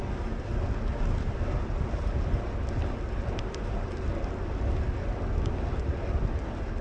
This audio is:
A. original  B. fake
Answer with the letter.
A